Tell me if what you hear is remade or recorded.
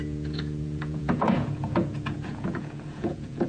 remade